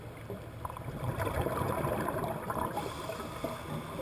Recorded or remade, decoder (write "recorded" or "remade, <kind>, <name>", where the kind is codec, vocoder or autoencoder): recorded